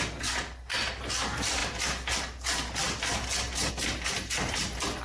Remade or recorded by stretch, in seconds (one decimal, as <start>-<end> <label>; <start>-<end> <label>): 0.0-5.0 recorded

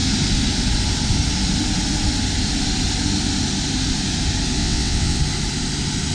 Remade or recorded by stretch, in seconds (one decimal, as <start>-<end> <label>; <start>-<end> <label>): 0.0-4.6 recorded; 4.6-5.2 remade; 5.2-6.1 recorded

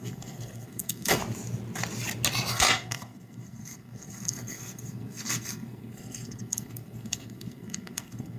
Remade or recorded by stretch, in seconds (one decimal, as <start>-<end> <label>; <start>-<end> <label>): 0.0-1.2 remade; 1.2-2.5 recorded; 2.5-8.4 remade